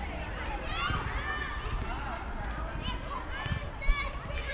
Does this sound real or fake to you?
real